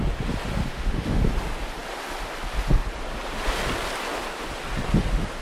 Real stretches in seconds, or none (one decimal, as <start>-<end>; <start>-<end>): 0.0-0.7; 1.2-5.4